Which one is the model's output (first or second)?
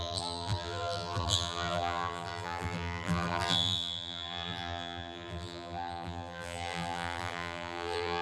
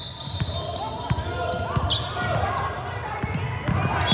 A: first